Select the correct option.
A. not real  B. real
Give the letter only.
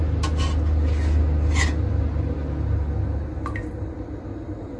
B